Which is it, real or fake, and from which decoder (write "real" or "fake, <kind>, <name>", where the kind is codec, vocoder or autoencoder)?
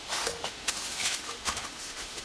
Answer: fake, autoencoder, DAC-VAE